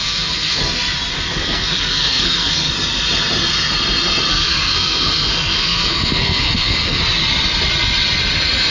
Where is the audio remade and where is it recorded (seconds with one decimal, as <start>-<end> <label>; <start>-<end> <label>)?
0.0-0.6 remade; 0.6-1.1 recorded; 1.1-2.7 remade; 2.7-4.3 recorded; 4.3-7.0 remade; 7.0-8.7 recorded